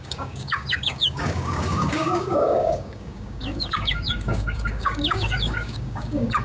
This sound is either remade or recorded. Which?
remade